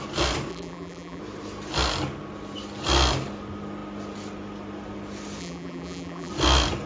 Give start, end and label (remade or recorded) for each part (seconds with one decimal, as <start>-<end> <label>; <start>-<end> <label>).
0.0-0.5 recorded; 0.5-1.2 remade; 1.2-5.4 recorded; 5.4-6.3 remade; 6.3-6.9 recorded